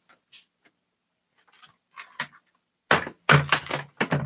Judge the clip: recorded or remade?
recorded